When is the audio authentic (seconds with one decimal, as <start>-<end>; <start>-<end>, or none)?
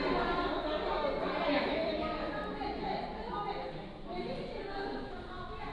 0.0-4.6; 5.1-5.7